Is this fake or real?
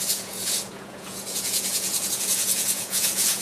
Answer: fake